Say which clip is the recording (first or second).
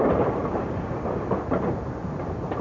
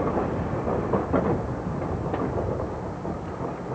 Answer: second